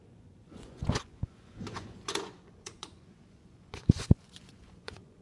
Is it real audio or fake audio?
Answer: fake